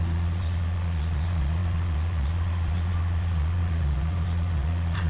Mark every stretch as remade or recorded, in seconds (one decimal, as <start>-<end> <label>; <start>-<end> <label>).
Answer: 0.0-5.1 remade